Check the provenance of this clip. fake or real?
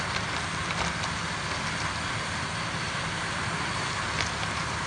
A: real